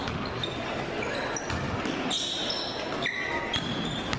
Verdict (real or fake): real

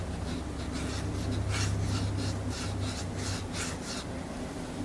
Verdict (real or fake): real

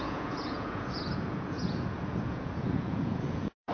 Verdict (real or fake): fake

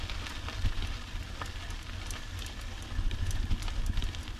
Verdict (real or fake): real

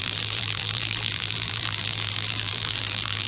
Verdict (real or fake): fake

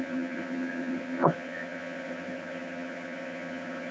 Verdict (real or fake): fake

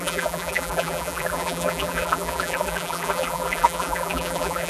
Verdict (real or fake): fake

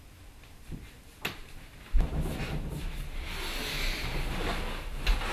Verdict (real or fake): real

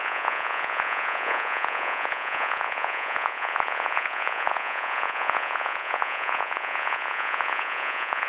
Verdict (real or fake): fake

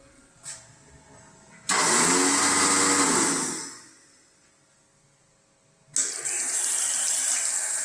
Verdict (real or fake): real